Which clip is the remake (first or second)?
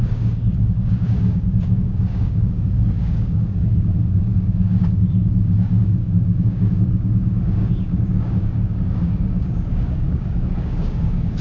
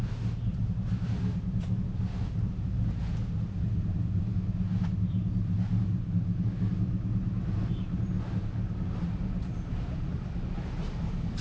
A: first